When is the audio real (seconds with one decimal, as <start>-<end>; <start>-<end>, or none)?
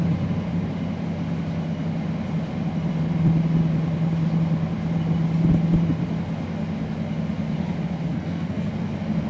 0.0-8.1; 8.7-9.3